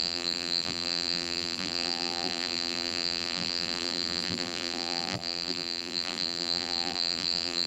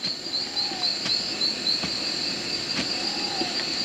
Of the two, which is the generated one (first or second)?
first